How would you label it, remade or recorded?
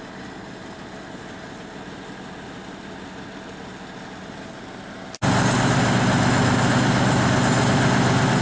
recorded